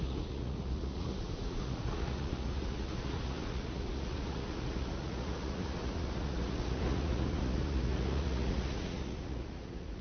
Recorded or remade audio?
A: remade